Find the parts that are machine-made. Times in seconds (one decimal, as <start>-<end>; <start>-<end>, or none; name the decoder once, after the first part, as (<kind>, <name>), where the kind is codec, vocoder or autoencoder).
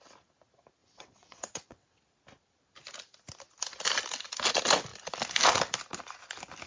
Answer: 0.8-2.0 (vocoder, WaveNeXt)